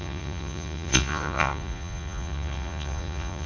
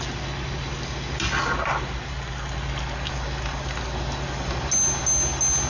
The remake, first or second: first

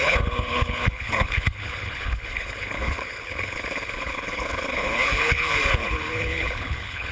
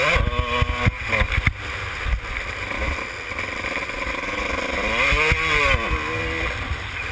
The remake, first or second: first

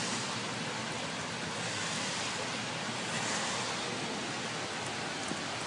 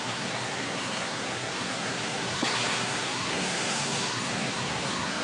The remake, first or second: second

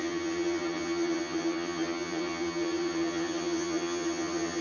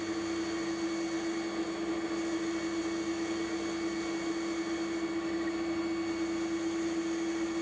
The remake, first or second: first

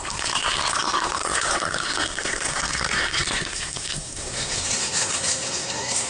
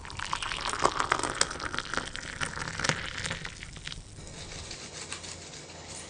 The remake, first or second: first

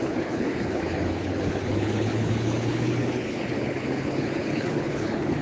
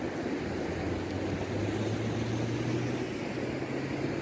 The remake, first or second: first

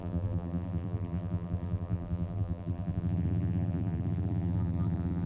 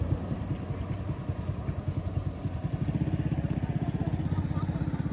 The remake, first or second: first